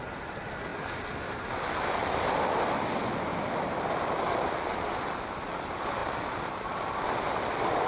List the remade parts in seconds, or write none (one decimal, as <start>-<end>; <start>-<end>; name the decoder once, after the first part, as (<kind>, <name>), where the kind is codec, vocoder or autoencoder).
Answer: none